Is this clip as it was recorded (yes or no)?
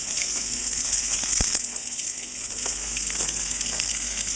no